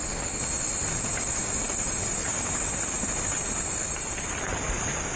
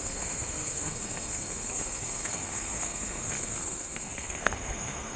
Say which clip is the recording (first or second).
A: first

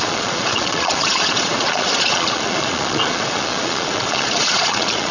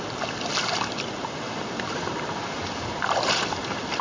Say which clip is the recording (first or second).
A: second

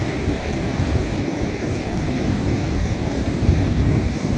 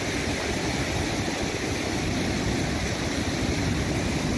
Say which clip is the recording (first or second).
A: second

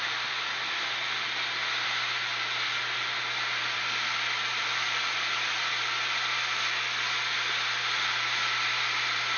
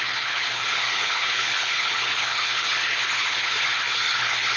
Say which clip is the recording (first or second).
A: first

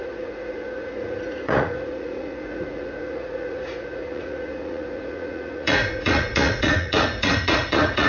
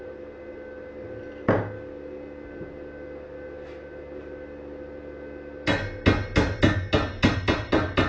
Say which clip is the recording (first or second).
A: second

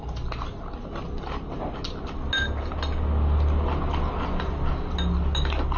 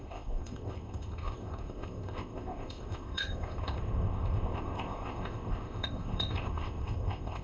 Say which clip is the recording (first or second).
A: first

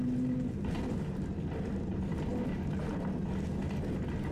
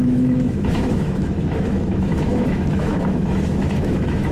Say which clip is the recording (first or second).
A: first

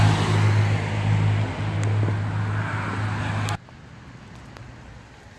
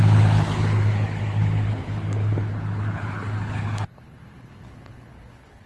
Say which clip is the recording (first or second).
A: first